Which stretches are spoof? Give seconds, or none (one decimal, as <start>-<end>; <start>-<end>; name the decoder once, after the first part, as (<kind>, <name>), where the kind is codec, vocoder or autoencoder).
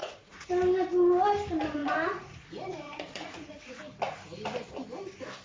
0.0-0.5 (vocoder, Vocos); 1.8-3.8